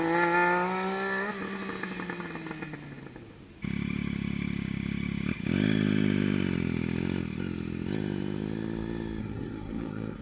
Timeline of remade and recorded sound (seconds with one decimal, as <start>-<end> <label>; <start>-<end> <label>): 0.0-9.2 recorded; 9.2-10.2 remade